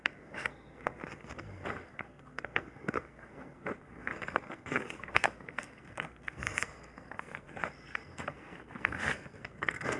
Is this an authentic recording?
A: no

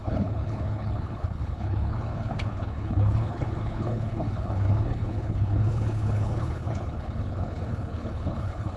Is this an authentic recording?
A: no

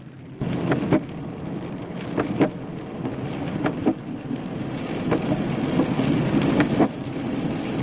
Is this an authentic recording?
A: yes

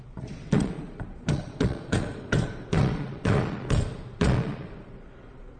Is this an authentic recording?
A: no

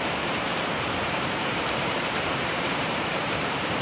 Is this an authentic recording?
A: no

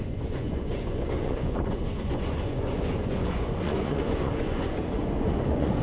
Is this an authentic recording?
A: no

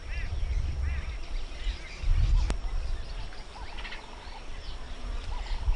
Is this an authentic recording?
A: yes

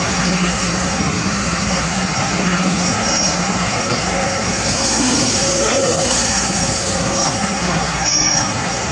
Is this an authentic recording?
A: no